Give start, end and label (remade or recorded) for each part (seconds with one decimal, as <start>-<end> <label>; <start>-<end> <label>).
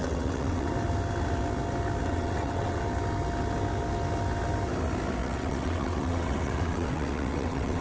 0.0-0.7 remade; 0.7-2.0 recorded; 2.0-2.8 remade; 2.8-5.2 recorded; 5.2-7.8 remade